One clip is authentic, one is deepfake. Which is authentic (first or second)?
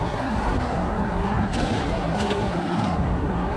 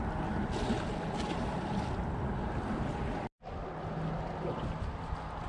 second